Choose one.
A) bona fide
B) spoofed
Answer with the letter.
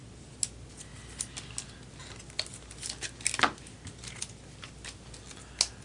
A